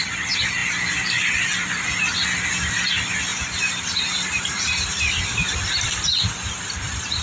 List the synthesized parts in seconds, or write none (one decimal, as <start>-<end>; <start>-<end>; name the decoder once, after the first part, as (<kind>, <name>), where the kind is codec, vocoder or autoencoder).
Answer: 0.6-1.3 (vocoder, BigVGAN v2); 3.3-6.0